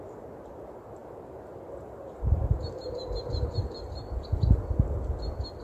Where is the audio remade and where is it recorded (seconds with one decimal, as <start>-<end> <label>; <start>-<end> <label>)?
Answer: 0.0-1.0 recorded; 1.0-4.4 remade; 4.4-5.6 recorded